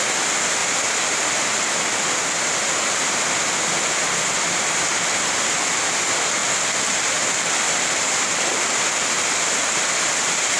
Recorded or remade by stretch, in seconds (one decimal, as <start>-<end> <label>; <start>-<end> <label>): 0.0-0.6 recorded; 0.6-1.6 remade; 1.6-6.4 recorded; 6.4-9.9 remade; 9.9-10.6 recorded